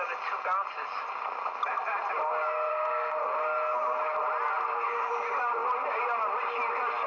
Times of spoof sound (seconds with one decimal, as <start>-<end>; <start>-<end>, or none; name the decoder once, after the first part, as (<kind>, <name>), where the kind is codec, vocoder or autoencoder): 2.7-3.2 (codec, SNAC)